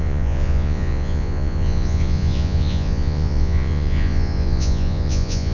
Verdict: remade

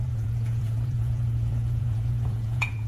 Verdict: remade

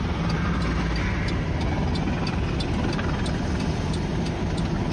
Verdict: recorded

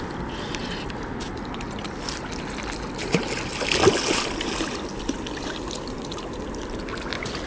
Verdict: recorded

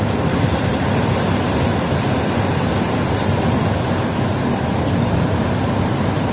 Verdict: recorded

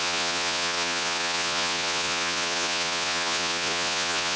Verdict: remade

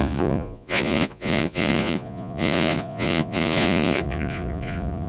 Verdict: remade